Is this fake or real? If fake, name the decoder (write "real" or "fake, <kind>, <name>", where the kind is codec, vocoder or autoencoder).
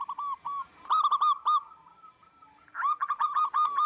real